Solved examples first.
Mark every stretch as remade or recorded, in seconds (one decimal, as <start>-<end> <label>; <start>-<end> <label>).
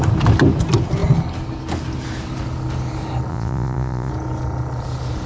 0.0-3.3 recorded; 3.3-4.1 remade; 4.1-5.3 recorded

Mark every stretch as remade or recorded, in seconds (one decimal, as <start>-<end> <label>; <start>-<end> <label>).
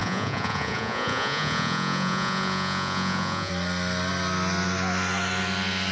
0.0-3.5 remade; 3.5-5.9 recorded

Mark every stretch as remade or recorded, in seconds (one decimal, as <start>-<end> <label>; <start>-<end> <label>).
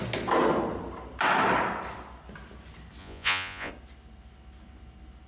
0.0-3.0 recorded; 3.0-3.7 remade; 3.7-5.3 recorded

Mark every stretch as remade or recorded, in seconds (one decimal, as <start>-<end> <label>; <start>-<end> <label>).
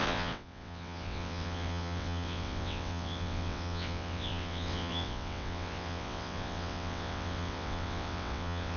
0.0-8.8 remade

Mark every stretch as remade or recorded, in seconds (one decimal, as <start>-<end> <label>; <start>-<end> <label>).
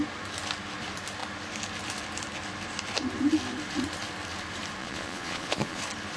0.0-4.8 recorded; 4.8-5.8 remade; 5.8-6.2 recorded